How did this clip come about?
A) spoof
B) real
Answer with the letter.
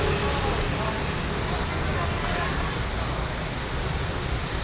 B